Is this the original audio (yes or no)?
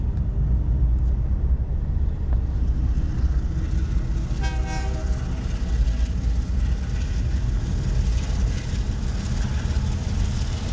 yes